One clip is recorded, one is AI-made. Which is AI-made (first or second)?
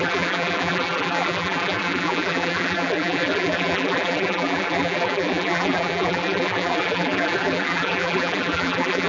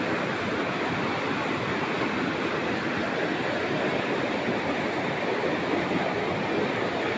first